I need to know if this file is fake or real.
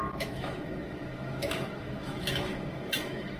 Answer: fake